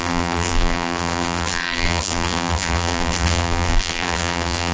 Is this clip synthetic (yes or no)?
yes